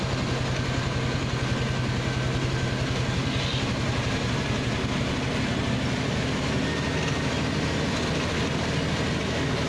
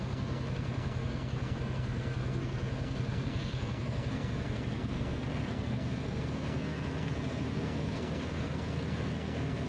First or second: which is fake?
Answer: second